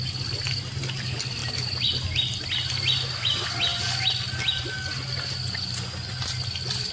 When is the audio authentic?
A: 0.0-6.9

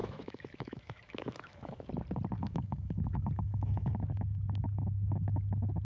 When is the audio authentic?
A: 1.9-2.4; 3.9-5.8

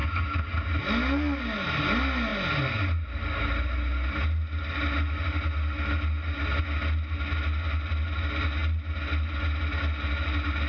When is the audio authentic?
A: 0.0-10.7

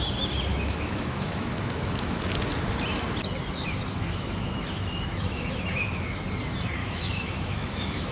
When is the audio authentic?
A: 0.0-0.5; 2.3-3.9; 6.2-6.8